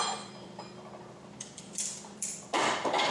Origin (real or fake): fake